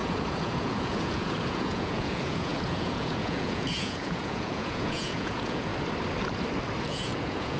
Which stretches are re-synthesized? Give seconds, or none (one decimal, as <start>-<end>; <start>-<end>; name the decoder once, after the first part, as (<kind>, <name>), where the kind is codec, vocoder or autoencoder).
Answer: 0.0-5.7 (vocoder, Vocos); 6.8-7.6